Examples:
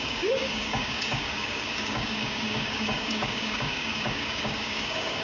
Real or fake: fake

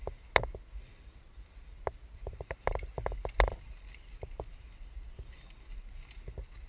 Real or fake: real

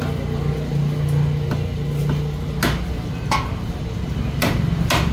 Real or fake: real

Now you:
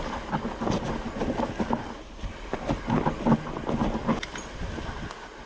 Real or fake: real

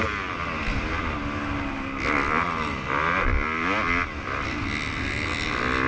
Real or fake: real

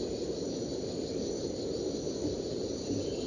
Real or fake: real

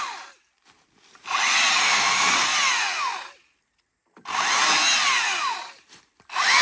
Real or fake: real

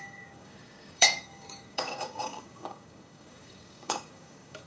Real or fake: fake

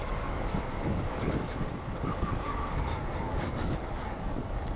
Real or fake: fake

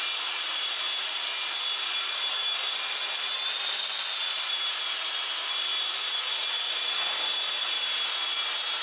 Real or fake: real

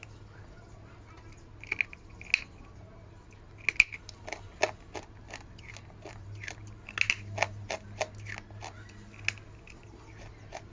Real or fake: real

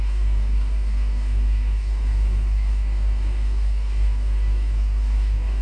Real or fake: fake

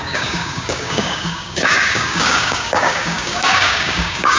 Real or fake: fake